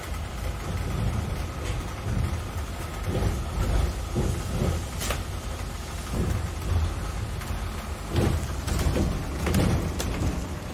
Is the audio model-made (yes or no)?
no